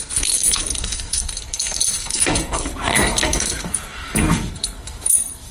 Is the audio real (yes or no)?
no